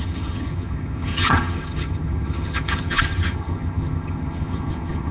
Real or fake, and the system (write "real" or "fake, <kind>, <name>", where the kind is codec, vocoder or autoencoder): fake, vocoder, HiFi-GAN